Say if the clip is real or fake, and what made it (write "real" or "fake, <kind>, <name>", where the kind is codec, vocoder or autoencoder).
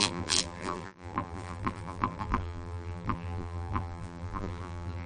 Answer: fake, vocoder, BigVGAN v2